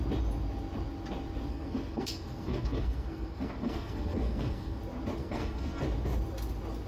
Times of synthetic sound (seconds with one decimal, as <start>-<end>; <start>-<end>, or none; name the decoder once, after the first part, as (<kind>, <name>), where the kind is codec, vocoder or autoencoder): 1.5-4.8 (codec, SNAC); 5.2-5.8